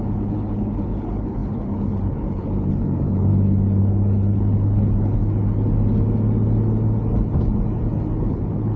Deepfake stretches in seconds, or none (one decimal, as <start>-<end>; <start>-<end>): 0.0-3.3; 3.8-5.2; 8.2-8.8